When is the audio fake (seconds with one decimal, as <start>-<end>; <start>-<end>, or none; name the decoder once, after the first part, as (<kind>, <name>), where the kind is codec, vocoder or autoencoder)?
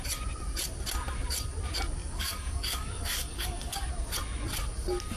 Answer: 2.0-3.9 (codec, DAC)